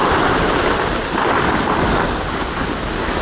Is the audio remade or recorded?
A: recorded